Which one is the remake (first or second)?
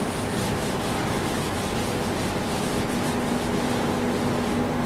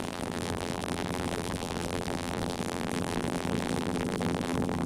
second